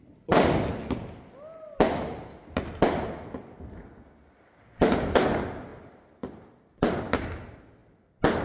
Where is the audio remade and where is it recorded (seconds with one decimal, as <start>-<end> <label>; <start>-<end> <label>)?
0.0-8.4 recorded